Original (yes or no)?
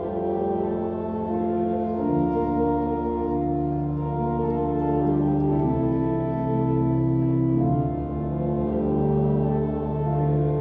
yes